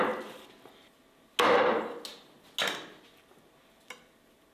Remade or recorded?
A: recorded